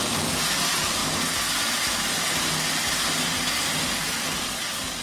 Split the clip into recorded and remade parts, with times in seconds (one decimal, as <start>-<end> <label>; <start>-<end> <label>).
0.0-5.0 recorded